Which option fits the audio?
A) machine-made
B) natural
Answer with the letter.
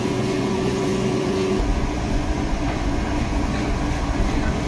A